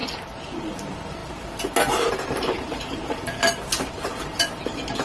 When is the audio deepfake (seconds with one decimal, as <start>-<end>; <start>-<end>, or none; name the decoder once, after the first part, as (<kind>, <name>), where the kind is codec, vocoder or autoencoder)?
0.6-5.0 (vocoder, BigVGAN v2)